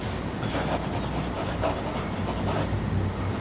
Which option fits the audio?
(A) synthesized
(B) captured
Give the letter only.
B